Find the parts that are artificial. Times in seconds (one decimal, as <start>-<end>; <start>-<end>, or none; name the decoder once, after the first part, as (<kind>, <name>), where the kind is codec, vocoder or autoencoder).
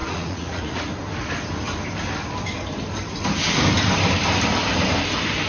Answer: 0.0-0.9 (vocoder, Vocos)